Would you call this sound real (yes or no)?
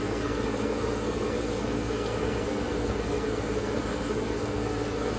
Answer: no